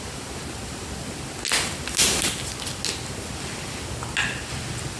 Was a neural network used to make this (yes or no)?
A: no